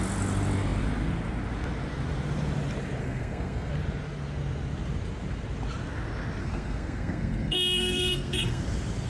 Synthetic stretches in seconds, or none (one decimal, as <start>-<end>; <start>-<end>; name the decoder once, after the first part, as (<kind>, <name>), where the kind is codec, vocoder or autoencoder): 3.0-3.7 (codec, SNAC); 6.4-8.6